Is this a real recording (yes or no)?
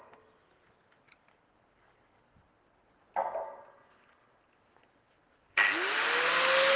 yes